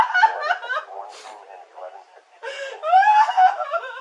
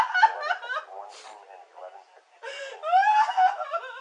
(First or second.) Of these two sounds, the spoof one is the first